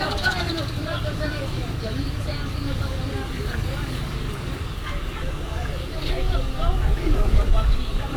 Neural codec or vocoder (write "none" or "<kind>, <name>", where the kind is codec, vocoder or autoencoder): codec, DAC